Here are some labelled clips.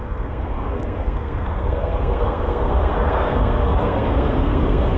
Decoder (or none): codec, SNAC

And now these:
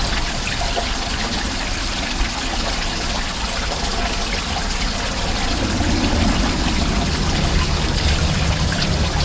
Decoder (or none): none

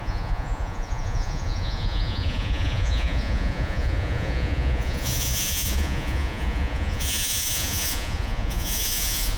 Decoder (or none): vocoder, Vocos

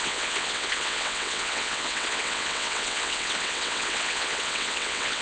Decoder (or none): vocoder, WaveNeXt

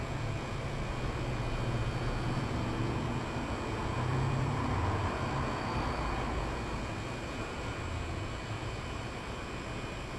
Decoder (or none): vocoder, Vocos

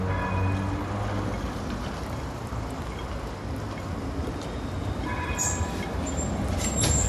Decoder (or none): none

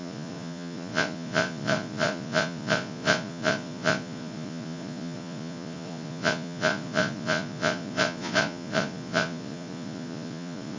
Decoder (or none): vocoder, Vocos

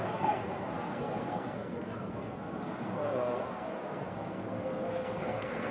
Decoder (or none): codec, SNAC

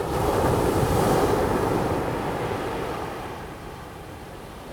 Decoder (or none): vocoder, BigVGAN v2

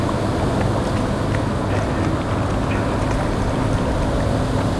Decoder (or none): none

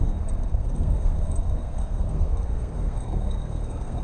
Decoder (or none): codec, SNAC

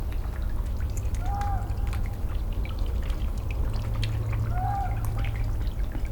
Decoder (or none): none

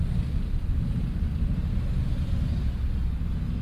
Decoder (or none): none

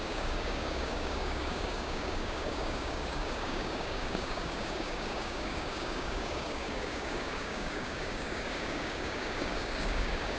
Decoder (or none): codec, DAC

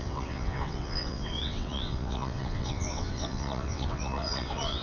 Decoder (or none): vocoder, WaveNeXt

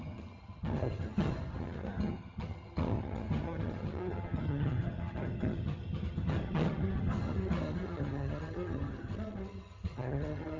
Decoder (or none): vocoder, HiFi-GAN